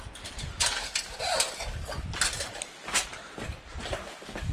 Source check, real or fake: real